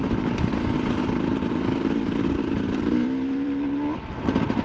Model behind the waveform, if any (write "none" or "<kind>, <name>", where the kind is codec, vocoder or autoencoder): vocoder, BigVGAN v2